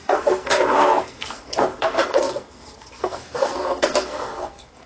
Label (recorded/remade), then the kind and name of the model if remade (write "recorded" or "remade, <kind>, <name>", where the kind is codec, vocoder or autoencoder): remade, codec, SNAC